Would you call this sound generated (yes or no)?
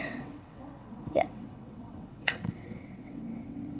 yes